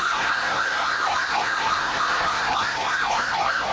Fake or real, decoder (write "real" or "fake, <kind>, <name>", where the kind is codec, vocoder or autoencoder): fake, codec, SNAC